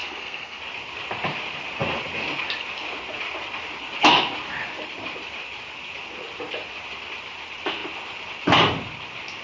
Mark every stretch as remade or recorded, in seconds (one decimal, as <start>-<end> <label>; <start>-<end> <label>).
0.0-0.6 remade; 0.6-9.4 recorded